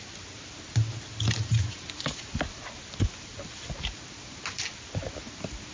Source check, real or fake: real